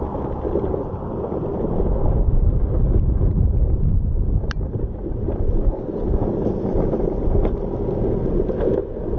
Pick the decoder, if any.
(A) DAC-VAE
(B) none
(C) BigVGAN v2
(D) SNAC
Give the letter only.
C